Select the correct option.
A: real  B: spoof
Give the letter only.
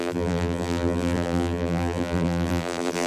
B